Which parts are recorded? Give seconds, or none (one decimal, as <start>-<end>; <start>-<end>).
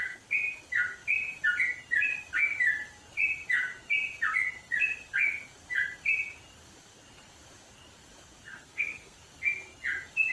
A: 0.0-8.5; 9.2-10.3